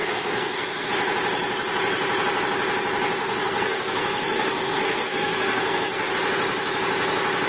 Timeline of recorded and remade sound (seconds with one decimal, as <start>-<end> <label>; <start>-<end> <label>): 0.0-0.9 remade; 0.9-3.2 recorded; 3.2-6.1 remade; 6.1-7.5 recorded